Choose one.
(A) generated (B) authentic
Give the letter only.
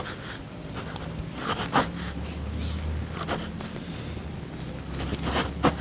B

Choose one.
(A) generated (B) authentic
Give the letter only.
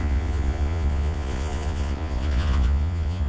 A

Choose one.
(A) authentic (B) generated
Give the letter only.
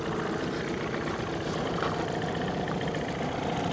A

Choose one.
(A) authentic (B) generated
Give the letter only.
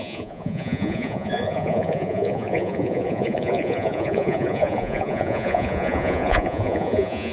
B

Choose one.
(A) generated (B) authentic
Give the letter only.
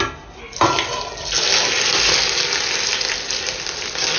B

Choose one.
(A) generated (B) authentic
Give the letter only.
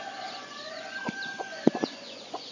A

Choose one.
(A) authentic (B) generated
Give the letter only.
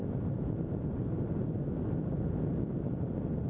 A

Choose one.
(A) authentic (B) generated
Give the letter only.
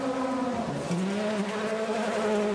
A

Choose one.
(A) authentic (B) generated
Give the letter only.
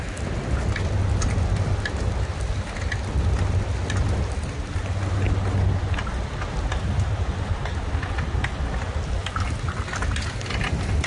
A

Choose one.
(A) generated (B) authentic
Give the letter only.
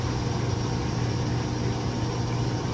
B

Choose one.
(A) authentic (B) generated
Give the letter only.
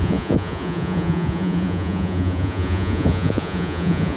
B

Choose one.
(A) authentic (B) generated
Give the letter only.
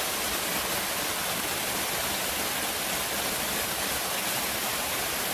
A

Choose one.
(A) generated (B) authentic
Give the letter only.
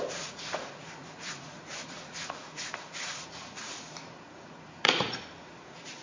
A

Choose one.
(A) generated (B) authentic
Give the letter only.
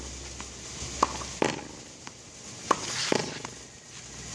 B